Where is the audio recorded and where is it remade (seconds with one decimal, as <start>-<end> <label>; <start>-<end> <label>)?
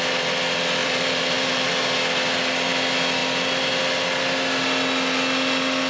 0.0-0.8 recorded; 0.8-1.7 remade; 1.7-5.9 recorded